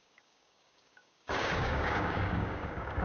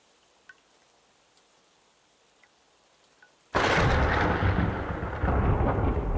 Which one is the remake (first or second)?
first